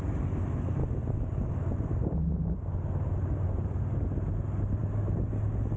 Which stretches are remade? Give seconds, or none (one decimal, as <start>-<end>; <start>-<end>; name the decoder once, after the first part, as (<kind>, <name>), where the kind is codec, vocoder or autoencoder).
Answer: none